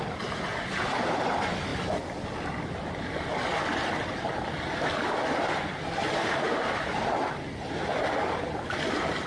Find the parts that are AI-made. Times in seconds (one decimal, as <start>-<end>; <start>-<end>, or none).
6.0-7.8